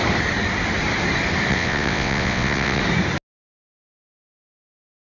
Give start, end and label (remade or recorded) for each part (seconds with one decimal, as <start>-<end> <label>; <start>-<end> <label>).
0.0-1.5 recorded; 1.5-2.8 remade; 2.8-5.2 recorded